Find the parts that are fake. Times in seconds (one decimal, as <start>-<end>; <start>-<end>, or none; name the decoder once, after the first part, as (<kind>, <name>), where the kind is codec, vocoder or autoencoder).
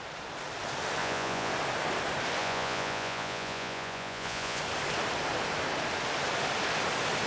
1.0-1.5 (vocoder, Vocos); 2.4-4.6